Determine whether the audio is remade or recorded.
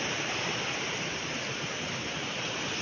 remade